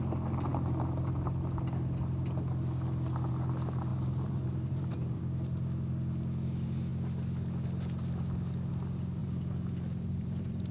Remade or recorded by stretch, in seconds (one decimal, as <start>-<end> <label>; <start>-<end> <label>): 0.0-3.9 recorded; 3.9-5.2 remade; 5.2-9.2 recorded; 9.2-10.7 remade